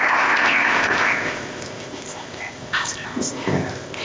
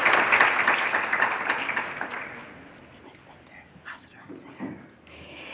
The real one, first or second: second